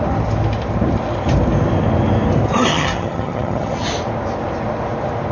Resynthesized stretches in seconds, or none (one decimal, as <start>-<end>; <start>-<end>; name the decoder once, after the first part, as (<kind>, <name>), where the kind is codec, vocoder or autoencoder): 2.7-3.9 (vocoder, HiFi-GAN)